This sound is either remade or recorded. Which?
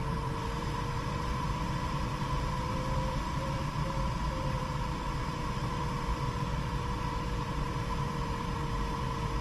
remade